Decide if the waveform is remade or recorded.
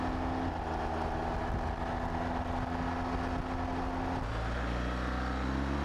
recorded